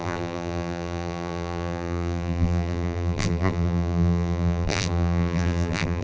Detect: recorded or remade remade